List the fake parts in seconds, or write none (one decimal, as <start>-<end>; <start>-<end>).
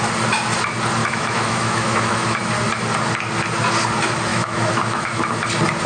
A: 1.0-2.5; 4.3-5.2